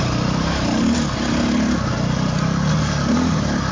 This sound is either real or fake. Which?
real